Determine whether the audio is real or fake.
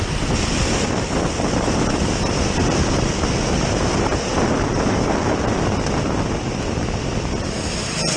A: real